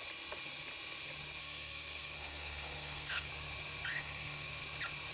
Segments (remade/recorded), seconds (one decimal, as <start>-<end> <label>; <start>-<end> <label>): 0.0-1.4 recorded; 1.4-3.3 remade; 3.3-3.9 recorded; 3.9-4.6 remade; 4.6-5.1 recorded